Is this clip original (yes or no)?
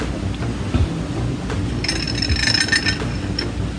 yes